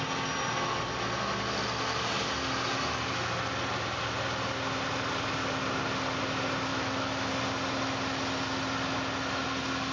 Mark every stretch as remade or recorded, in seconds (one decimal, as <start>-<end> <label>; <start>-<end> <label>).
0.0-6.7 recorded; 6.7-7.3 remade; 7.3-9.9 recorded